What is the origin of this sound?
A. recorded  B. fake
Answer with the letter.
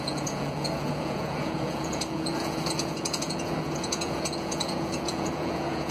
B